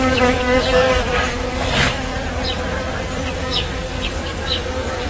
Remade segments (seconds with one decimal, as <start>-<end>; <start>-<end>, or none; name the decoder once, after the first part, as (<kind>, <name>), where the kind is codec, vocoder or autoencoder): 0.0-2.1 (codec, DAC); 3.3-5.1